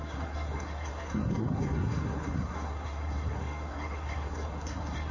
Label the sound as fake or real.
fake